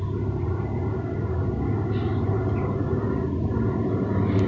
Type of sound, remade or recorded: recorded